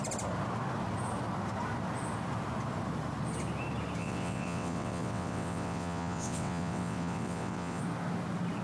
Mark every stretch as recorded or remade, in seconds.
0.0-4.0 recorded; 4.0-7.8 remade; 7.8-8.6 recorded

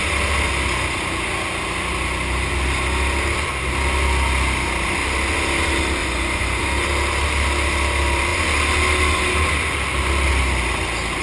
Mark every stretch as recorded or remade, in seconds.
0.0-6.0 recorded; 6.0-6.6 remade; 6.6-11.2 recorded

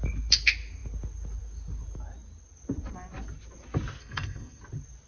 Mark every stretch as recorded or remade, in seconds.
0.0-4.0 recorded; 4.0-4.6 remade; 4.6-5.1 recorded